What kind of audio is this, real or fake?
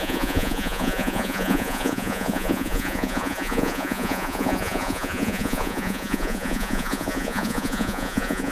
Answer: fake